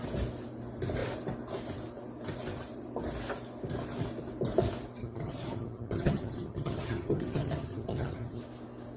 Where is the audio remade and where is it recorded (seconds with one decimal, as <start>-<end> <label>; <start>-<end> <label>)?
0.0-5.0 recorded; 5.0-8.4 remade; 8.4-9.0 recorded